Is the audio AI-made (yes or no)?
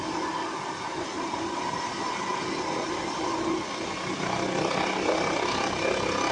no